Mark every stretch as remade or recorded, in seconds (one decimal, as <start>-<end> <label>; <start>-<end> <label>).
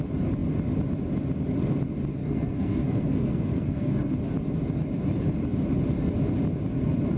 0.0-2.1 recorded; 2.1-4.1 remade; 4.1-7.2 recorded